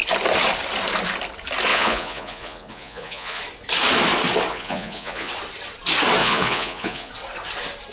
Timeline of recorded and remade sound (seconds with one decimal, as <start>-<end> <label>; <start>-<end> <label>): 0.0-1.7 recorded; 1.7-3.4 remade; 3.4-4.5 recorded; 4.5-5.3 remade; 5.3-6.2 recorded; 6.2-7.1 remade; 7.1-7.9 recorded

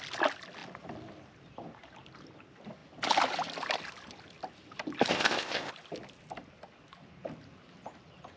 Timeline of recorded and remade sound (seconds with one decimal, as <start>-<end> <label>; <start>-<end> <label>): 0.0-5.1 recorded; 5.1-5.7 remade; 5.7-8.4 recorded